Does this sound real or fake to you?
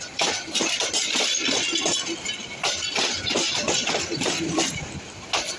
real